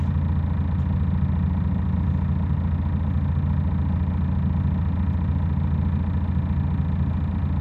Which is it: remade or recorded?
recorded